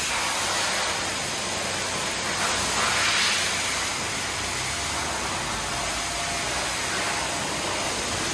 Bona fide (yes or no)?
yes